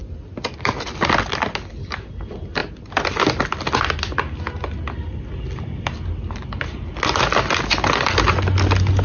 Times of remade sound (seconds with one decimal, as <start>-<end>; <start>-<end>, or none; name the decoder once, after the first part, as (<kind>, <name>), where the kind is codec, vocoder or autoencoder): none